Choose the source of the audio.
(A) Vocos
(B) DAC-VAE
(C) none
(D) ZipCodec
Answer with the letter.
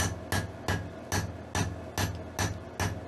C